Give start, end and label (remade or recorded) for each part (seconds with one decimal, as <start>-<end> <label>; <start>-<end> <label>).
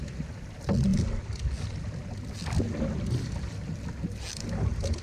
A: 0.0-5.0 recorded